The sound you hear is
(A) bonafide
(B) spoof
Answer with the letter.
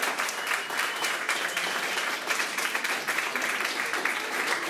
B